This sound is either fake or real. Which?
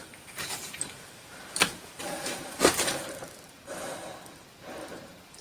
fake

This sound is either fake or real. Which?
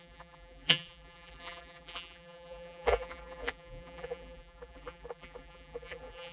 fake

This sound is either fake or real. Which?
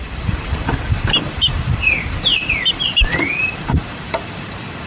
fake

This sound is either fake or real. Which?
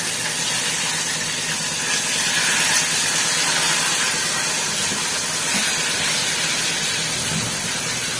real